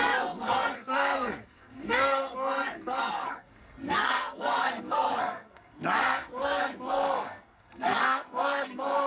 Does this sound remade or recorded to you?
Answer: remade